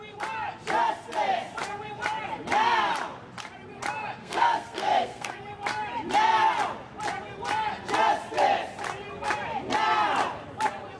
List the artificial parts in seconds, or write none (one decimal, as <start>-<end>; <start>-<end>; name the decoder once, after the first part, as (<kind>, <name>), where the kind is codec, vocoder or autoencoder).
4.2-5.4 (codec, SNAC)